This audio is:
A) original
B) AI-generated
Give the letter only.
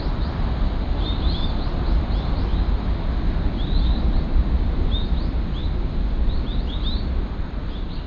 A